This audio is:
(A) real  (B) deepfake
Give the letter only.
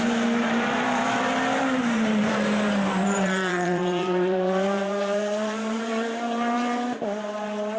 B